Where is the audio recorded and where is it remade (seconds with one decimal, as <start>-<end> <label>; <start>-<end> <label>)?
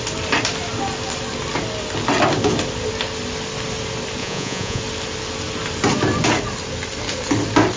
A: 0.0-4.2 recorded; 4.2-4.8 remade; 4.8-7.8 recorded